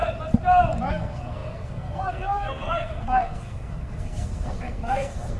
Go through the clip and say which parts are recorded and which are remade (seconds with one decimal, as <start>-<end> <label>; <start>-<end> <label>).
0.0-0.9 recorded; 0.9-5.4 remade